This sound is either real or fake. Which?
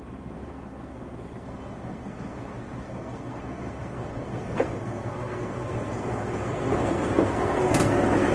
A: fake